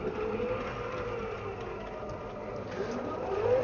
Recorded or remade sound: recorded